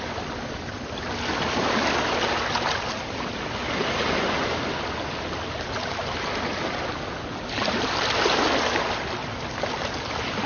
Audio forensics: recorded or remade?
recorded